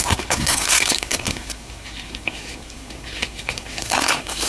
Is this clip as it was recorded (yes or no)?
no